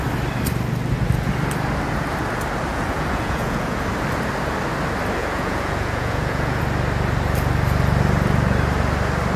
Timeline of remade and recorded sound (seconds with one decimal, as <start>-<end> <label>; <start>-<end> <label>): 0.0-2.7 recorded; 2.7-3.8 remade; 3.8-5.2 recorded; 5.2-6.6 remade; 6.6-9.4 recorded

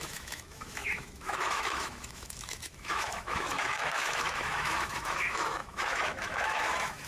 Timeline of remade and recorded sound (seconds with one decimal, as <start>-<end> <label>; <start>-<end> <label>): 0.0-7.1 remade

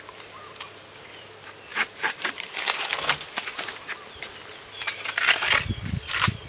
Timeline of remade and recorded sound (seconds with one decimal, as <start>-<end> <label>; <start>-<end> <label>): 0.0-1.7 recorded; 1.7-2.8 remade; 2.8-6.5 recorded

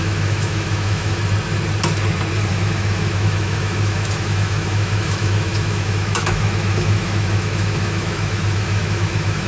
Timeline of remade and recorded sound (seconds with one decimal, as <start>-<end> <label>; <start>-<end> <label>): 0.0-1.2 remade; 1.2-2.5 recorded; 2.5-9.5 remade

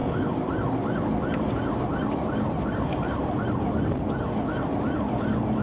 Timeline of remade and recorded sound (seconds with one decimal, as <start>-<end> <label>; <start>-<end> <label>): 0.0-5.6 recorded

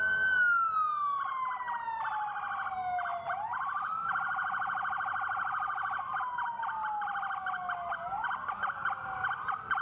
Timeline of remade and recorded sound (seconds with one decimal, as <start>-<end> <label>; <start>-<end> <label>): 0.0-9.8 recorded